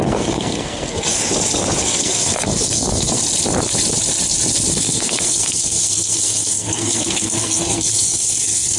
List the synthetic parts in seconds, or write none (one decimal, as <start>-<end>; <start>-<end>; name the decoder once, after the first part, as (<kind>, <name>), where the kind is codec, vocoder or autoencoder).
0.0-1.2 (codec, SNAC); 1.8-3.2; 4.7-8.8